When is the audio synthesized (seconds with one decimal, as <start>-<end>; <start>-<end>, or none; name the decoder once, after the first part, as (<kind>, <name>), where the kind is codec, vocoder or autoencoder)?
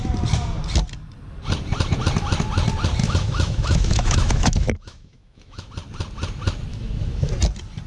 3.0-5.7 (autoencoder, DAC-VAE); 6.7-7.3